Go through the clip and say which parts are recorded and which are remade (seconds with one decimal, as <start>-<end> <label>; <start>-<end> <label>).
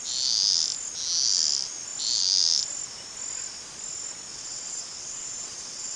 0.0-4.3 recorded; 4.3-6.0 remade